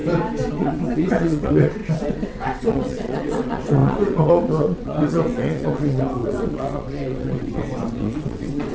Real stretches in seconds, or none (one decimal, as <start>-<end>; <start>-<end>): 0.0-0.5